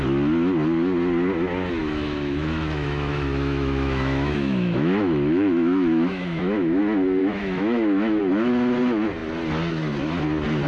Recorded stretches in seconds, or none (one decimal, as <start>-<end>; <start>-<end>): 0.0-1.8; 6.8-7.2; 8.2-10.7